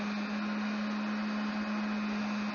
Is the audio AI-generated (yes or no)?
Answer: no